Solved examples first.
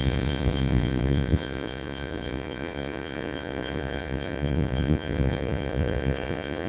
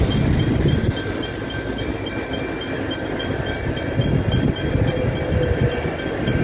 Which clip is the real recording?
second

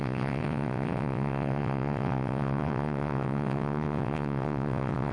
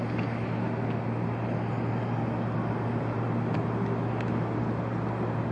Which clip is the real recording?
second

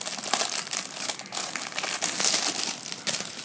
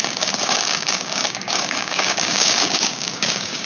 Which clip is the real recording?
first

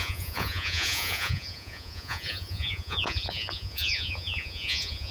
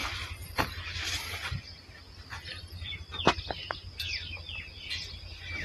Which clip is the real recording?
second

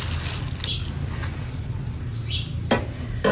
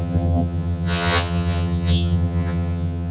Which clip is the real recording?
first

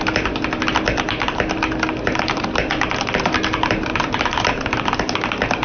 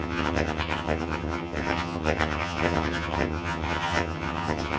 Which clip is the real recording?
first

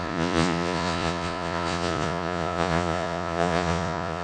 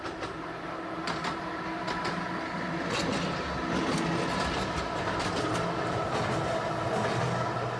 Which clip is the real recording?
second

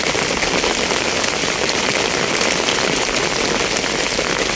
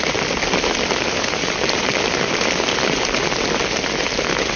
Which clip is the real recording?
first